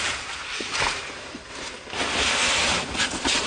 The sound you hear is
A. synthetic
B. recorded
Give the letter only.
B